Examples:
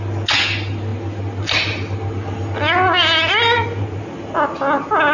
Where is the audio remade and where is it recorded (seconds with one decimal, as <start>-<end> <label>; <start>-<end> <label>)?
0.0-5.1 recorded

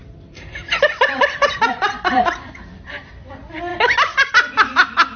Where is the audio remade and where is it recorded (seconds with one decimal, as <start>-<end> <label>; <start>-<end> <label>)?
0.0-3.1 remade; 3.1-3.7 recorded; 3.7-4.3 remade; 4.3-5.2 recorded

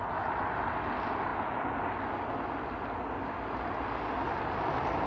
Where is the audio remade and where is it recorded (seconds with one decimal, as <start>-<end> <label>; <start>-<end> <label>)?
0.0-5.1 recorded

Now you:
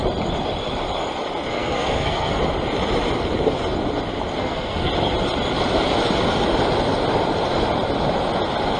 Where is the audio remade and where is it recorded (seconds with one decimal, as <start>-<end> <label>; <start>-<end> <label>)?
0.0-1.5 recorded; 1.5-2.4 remade; 2.4-4.4 recorded; 4.4-4.9 remade; 4.9-8.8 recorded